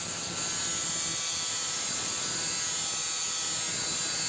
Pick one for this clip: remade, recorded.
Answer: recorded